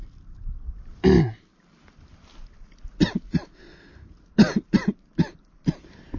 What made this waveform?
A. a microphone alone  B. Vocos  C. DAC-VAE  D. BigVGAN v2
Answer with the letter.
A